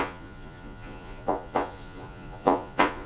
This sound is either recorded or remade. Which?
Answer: remade